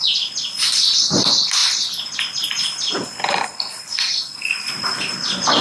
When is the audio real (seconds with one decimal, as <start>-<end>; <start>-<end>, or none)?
0.0-5.6